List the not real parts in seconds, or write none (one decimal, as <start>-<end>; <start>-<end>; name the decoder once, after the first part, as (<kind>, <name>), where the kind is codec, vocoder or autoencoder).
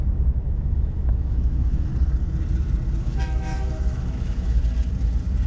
0.0-1.9 (autoencoder, DAC-VAE); 3.0-4.6